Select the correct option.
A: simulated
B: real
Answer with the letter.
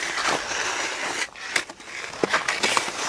B